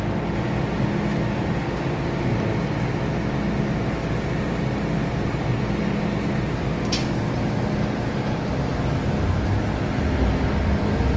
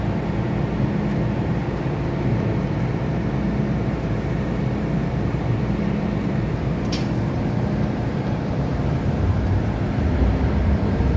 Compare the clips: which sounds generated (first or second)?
second